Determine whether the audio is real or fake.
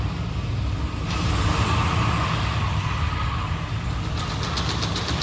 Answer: real